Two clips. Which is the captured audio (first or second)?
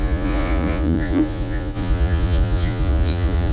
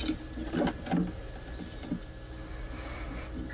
second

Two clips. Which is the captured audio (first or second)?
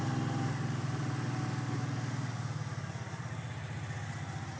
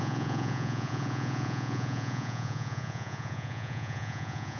first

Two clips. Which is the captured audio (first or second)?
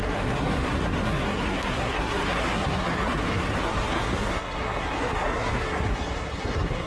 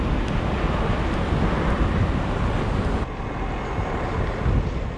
second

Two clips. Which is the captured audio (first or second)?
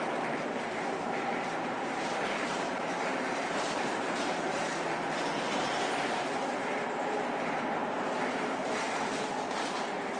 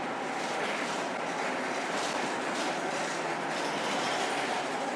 second